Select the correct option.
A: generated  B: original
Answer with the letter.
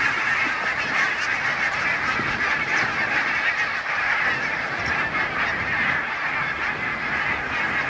B